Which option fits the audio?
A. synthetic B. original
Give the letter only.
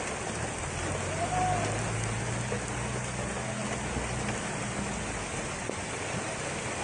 B